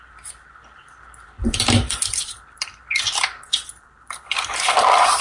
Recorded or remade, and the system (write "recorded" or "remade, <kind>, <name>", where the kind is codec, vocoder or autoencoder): remade, vocoder, BigVGAN v2